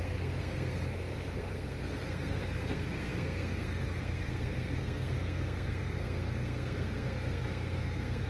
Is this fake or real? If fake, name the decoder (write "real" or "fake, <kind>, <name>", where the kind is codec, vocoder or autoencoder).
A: fake, codec, SNAC